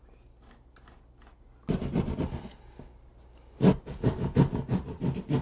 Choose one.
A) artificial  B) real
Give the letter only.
B